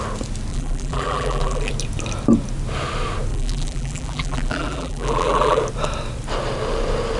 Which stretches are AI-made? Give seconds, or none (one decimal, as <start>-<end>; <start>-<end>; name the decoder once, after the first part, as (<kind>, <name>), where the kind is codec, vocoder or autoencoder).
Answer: 0.5-1.7 (vocoder, BigVGAN v2); 3.3-5.6